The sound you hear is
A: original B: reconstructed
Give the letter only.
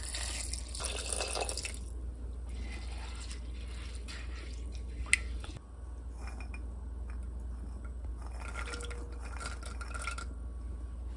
A